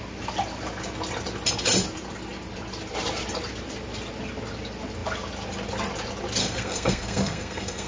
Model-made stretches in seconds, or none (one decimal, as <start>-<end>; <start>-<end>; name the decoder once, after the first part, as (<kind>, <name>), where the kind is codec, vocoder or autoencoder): 6.4-7.9 (codec, SNAC)